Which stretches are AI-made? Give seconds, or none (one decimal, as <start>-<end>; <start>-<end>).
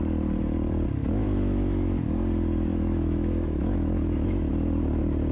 1.0-2.0; 2.7-4.5